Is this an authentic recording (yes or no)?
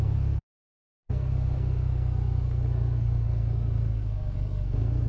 no